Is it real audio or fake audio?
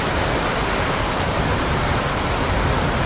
fake